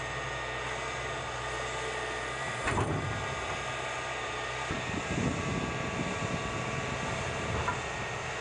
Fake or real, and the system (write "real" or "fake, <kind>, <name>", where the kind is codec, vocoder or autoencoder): real